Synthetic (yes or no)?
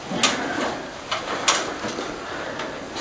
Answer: no